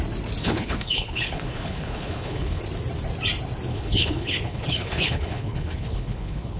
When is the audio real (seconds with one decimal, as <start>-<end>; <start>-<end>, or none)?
0.0-0.4; 2.6-3.7